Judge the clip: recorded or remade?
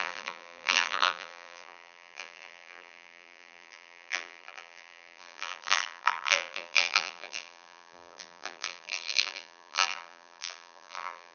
remade